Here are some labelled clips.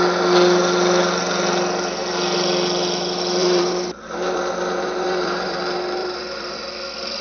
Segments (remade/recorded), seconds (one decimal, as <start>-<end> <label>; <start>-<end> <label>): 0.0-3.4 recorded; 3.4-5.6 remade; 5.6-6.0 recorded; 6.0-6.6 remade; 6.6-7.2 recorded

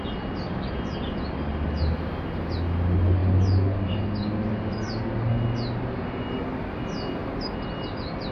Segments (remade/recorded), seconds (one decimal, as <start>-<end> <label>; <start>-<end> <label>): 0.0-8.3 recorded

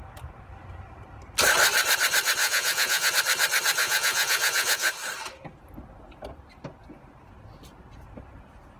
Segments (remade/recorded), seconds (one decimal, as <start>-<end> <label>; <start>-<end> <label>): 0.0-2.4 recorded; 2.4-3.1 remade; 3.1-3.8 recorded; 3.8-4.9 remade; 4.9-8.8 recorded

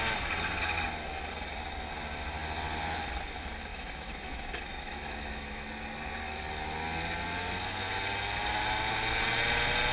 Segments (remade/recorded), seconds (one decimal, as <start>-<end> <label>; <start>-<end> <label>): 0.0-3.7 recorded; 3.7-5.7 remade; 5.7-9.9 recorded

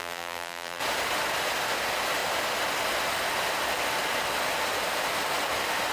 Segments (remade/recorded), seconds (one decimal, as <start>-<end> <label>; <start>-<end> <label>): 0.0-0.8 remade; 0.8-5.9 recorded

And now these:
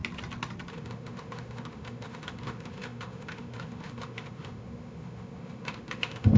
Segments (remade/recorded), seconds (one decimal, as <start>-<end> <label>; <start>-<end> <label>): 0.0-0.7 recorded; 0.7-6.4 remade

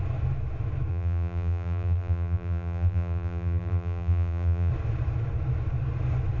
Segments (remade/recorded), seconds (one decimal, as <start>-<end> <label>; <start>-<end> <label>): 0.0-0.9 recorded; 0.9-4.7 remade; 4.7-6.4 recorded

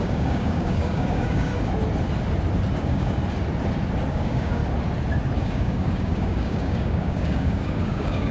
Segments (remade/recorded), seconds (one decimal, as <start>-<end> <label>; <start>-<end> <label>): 0.0-1.5 remade; 1.5-2.8 recorded; 2.8-3.2 remade; 3.2-4.1 recorded; 4.1-4.6 remade; 4.6-5.4 recorded; 5.4-8.3 remade